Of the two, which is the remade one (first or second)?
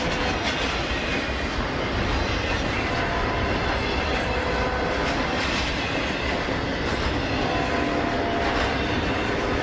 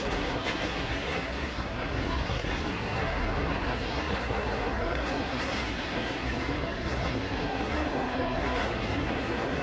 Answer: second